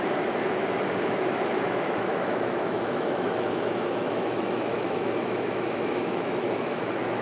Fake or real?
fake